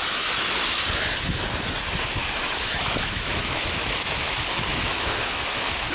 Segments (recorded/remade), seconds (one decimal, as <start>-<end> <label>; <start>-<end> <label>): 0.0-0.8 remade; 0.8-2.2 recorded; 2.2-5.9 remade